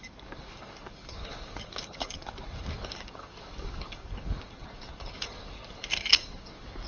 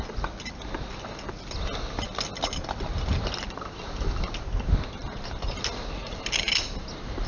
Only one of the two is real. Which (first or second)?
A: second